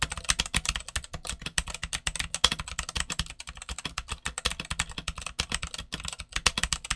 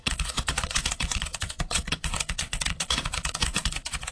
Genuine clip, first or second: first